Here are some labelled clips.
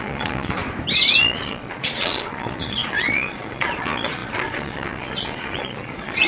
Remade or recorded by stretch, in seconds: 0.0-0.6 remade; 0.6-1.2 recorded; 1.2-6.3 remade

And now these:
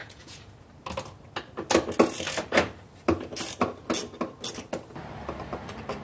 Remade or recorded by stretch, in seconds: 0.0-0.5 remade; 0.5-6.0 recorded

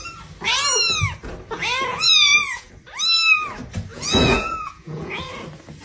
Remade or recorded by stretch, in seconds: 0.0-1.9 recorded; 1.9-2.7 remade; 2.7-3.9 recorded; 3.9-5.3 remade; 5.3-5.8 recorded

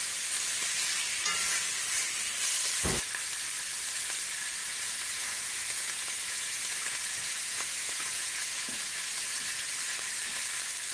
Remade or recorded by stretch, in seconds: 0.0-4.6 recorded; 4.6-9.7 remade; 9.7-10.9 recorded

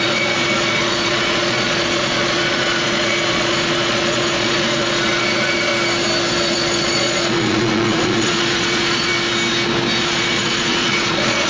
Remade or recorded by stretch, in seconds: 0.0-5.7 remade; 5.7-6.3 recorded; 6.3-9.1 remade; 9.1-10.0 recorded; 10.0-11.5 remade

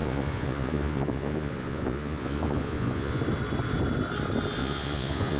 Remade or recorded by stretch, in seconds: 0.0-3.2 remade; 3.2-4.6 recorded; 4.6-5.4 remade